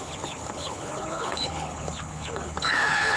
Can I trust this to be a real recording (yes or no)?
no